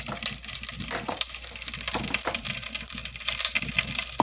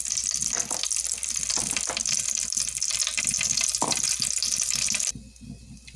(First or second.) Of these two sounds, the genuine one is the second